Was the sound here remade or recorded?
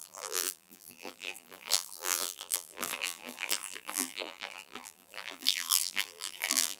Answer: remade